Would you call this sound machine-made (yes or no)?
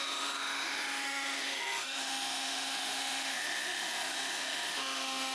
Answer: yes